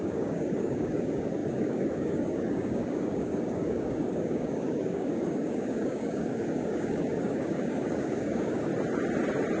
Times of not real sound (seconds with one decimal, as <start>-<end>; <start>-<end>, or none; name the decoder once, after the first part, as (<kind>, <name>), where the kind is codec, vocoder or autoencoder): 0.0-8.7 (codec, DAC)